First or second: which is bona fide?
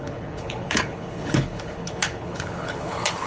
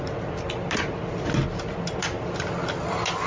second